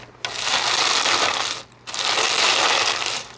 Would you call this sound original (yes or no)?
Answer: yes